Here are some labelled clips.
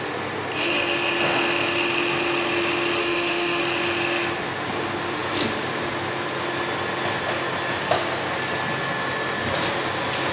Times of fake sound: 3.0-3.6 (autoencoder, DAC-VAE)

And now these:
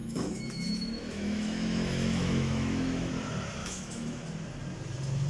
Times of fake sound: 0.0-3.1 (autoencoder, DAC-VAE); 3.6-4.2

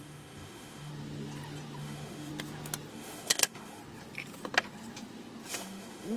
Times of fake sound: 0.0-0.9 (autoencoder, DAC-VAE); 1.8-2.3; 2.9-3.8; 5.5-6.2

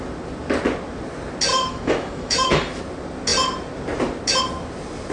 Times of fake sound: 1.5-2.8 (autoencoder, DAC-VAE)

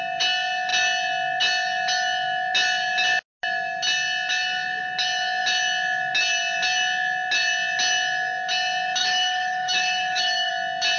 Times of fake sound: 9.0-10.5 (autoencoder, DAC-VAE)

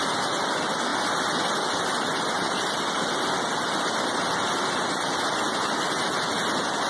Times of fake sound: none

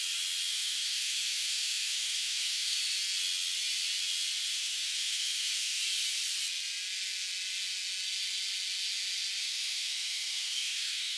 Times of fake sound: 0.5-2.8 (autoencoder, DAC-VAE); 4.5-5.8; 9.4-11.2